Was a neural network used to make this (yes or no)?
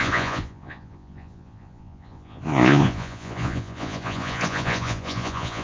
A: yes